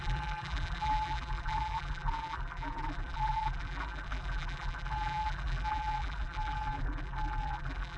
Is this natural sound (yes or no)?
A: no